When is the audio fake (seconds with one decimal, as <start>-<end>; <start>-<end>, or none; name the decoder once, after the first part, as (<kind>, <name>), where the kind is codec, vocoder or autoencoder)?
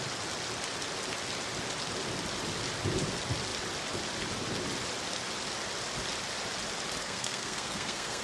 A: 7.0-8.2 (codec, SNAC)